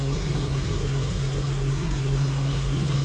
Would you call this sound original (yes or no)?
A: no